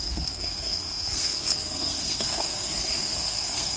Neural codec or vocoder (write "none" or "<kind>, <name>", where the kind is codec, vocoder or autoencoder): codec, SNAC